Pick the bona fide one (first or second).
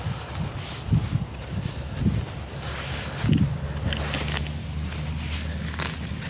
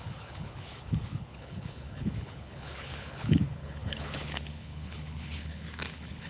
first